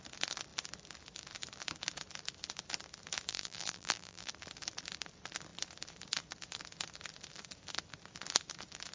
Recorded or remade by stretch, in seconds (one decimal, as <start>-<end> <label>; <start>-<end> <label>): 0.0-3.3 recorded; 3.3-4.3 remade; 4.3-8.9 recorded